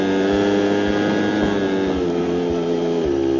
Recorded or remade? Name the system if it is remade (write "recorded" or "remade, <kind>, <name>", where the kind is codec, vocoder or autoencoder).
recorded